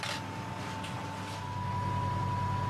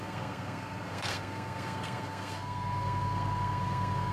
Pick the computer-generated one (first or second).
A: second